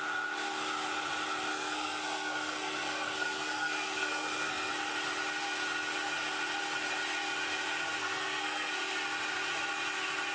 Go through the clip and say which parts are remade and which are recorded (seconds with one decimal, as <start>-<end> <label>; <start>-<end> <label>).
0.0-1.5 recorded; 1.5-4.7 remade; 4.7-8.0 recorded; 8.0-8.7 remade; 8.7-10.3 recorded